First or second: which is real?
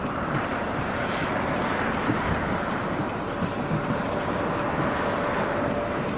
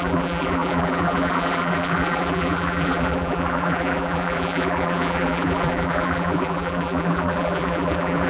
first